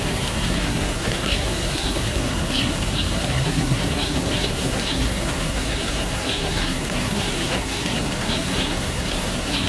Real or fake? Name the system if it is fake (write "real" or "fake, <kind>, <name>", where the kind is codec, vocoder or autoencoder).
fake, codec, SNAC